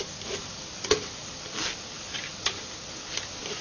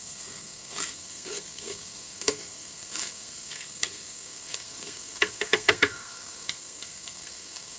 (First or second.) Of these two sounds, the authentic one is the first